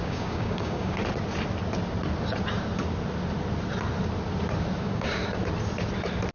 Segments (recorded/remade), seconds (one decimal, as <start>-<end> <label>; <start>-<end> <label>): 0.0-1.0 remade; 1.0-4.8 recorded; 4.8-5.2 remade; 5.2-6.3 recorded